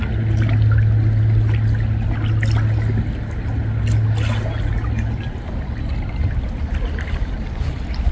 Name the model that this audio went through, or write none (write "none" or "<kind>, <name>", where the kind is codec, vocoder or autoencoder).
none